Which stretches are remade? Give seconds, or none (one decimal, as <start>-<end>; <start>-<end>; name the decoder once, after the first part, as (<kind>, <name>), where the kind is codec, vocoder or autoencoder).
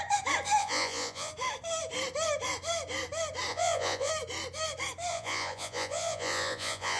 0.6-1.3 (vocoder, Vocos); 3.5-4.1; 5.1-7.0